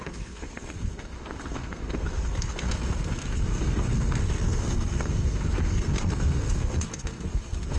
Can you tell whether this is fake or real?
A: fake